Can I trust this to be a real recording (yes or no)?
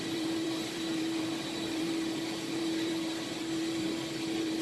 no